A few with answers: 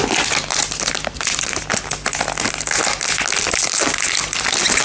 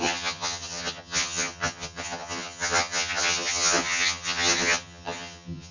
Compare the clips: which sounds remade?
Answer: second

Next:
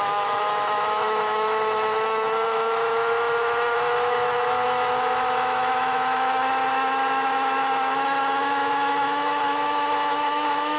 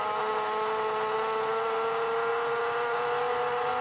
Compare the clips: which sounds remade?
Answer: first